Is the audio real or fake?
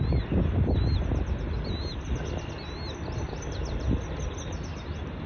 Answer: real